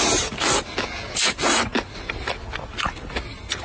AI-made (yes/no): no